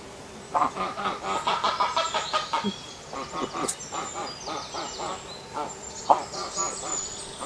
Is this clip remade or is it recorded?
recorded